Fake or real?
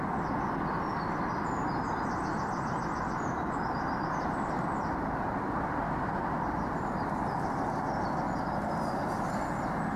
real